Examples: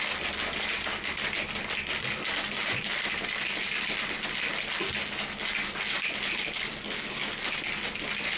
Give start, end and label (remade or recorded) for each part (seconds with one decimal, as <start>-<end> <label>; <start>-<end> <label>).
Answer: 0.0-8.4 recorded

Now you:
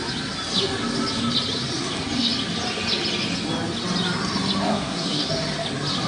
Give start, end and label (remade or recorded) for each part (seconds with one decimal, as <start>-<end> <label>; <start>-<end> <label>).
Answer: 0.0-4.7 recorded; 4.7-5.3 remade; 5.3-6.1 recorded

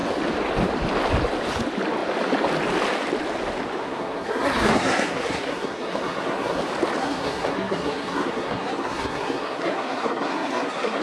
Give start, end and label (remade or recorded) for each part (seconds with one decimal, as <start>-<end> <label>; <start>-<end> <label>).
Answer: 0.0-3.8 recorded; 3.8-6.6 remade; 6.6-7.0 recorded; 7.0-11.0 remade